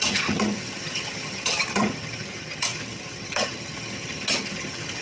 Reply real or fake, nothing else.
fake